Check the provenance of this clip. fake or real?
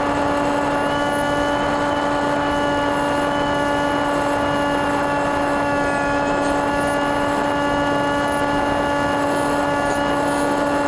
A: real